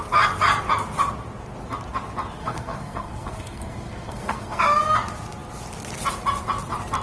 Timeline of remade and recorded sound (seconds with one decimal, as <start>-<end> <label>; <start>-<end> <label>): 0.0-2.4 recorded; 2.4-4.6 remade; 4.6-7.0 recorded